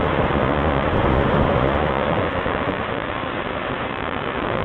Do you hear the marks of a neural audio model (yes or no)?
yes